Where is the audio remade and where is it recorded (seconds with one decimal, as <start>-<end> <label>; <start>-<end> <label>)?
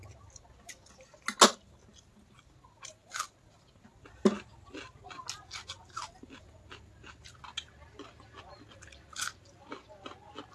0.0-10.5 recorded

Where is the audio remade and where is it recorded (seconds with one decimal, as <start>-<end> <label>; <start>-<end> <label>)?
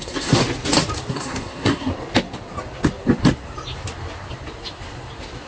0.0-0.4 remade; 0.4-1.1 recorded; 1.1-1.9 remade; 1.9-5.5 recorded